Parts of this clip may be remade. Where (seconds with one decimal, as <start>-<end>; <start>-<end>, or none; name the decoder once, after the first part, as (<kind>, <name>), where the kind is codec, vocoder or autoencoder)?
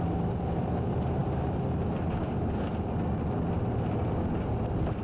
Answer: none